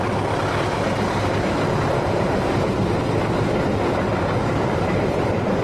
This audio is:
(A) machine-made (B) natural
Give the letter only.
B